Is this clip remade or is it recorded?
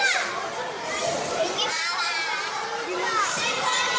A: remade